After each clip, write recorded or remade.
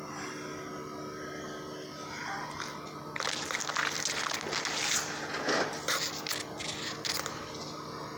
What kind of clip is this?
recorded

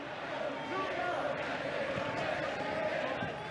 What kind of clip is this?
remade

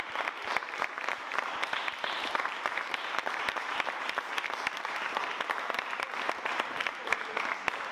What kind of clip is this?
remade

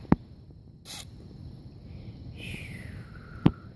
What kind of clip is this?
recorded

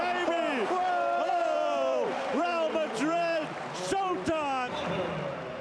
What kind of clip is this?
remade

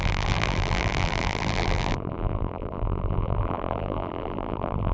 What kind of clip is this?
remade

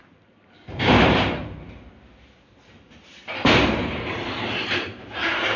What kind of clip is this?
remade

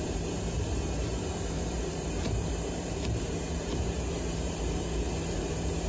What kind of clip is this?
remade